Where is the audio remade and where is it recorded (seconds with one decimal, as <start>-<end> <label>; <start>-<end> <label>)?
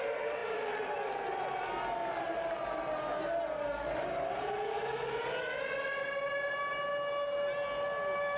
0.0-8.4 recorded